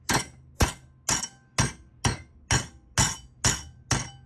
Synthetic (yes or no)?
no